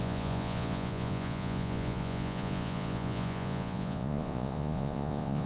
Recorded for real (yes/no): no